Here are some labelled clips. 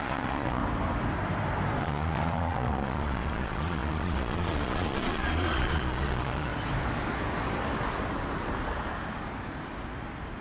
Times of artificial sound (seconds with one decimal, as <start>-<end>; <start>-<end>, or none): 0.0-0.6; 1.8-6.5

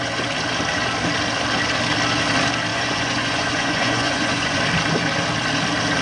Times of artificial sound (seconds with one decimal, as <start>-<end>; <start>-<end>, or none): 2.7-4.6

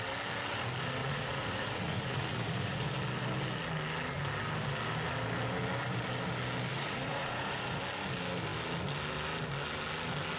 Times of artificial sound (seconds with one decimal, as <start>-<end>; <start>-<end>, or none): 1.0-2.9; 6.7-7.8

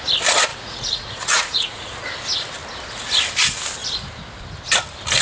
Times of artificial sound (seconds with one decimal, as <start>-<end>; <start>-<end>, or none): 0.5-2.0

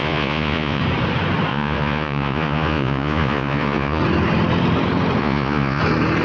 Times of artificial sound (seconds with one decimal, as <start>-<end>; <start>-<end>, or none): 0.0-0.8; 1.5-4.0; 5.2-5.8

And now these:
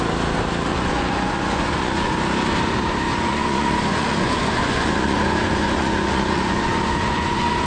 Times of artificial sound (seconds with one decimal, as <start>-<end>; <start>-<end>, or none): 0.7-2.1; 3.1-7.7

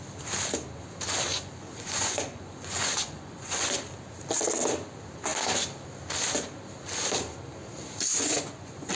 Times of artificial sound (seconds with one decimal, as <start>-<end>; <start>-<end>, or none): 1.3-3.7; 8.1-8.9

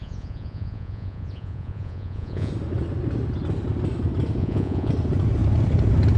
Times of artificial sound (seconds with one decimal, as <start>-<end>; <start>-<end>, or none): 0.0-2.5; 4.4-4.9